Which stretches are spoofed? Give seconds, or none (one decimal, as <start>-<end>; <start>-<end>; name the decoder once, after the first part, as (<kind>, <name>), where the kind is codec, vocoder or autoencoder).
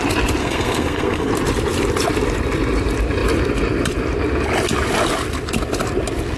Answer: 0.4-1.3 (codec, SNAC)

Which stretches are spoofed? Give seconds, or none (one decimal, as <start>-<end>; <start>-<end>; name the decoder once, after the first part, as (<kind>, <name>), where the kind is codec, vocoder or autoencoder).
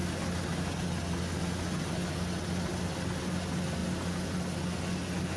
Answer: none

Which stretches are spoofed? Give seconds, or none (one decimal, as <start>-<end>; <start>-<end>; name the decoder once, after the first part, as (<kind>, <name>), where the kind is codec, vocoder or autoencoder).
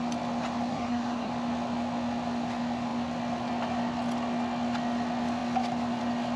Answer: 0.7-1.3 (codec, SNAC)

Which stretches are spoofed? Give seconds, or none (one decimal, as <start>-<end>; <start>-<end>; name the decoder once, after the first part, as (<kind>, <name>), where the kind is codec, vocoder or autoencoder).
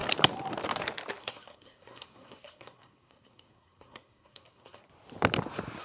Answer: 1.2-4.8 (codec, SNAC)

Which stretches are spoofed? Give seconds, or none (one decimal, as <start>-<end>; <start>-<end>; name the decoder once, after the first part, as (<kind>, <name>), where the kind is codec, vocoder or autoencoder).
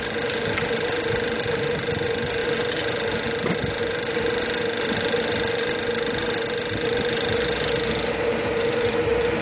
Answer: none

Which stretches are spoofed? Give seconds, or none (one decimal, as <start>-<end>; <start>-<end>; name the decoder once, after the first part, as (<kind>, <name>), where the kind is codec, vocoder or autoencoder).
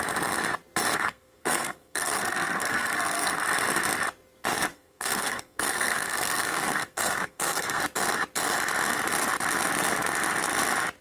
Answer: 0.9-3.4 (codec, SNAC); 4.7-7.8